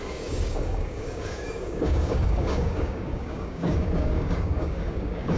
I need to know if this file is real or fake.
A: fake